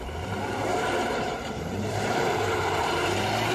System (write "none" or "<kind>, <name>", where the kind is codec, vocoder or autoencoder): vocoder, BigVGAN v2